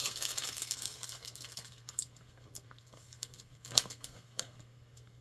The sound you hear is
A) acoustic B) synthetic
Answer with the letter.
B